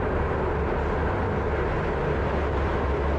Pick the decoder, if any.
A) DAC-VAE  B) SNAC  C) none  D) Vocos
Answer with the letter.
C